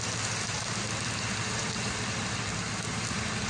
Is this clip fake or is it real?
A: real